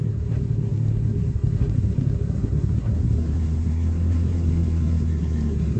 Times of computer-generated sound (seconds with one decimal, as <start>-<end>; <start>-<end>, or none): 0.0-5.8